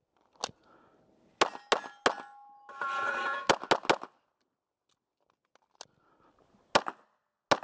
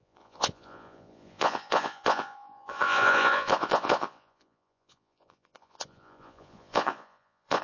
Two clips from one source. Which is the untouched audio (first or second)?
first